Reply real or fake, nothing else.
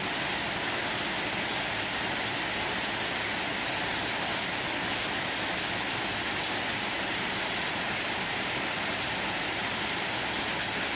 real